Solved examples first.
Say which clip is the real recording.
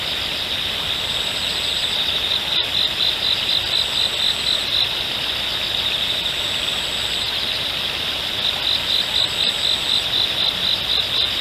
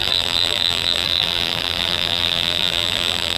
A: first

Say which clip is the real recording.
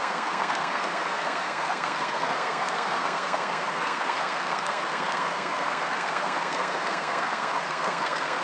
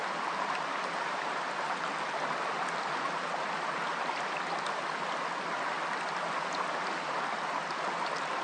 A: second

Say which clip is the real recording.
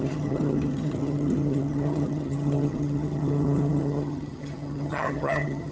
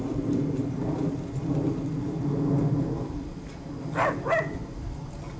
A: second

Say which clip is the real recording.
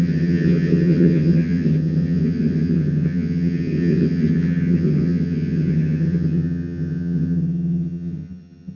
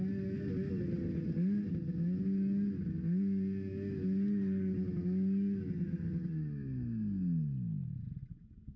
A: second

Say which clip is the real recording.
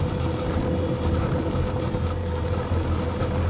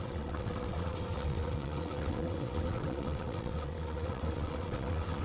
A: first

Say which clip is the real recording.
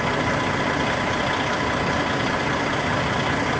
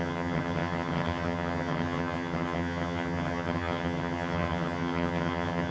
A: first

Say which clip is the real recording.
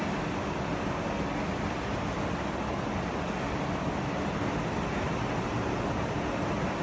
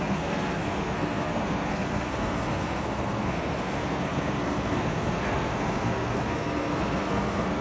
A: first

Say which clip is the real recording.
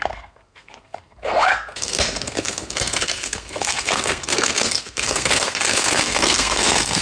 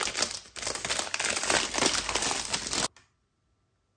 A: second